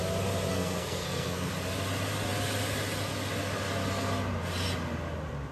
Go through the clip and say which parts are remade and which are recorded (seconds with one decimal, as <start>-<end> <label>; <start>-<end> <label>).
0.0-0.5 recorded; 0.5-1.5 remade; 1.5-5.5 recorded